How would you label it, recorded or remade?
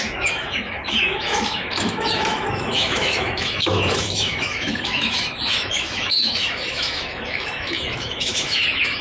remade